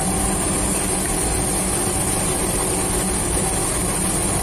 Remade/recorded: recorded